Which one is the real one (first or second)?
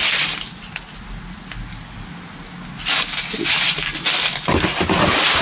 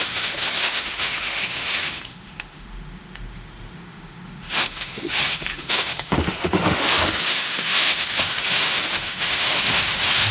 first